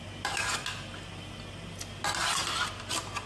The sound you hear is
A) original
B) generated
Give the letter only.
A